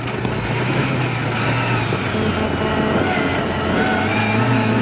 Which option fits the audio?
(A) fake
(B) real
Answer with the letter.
B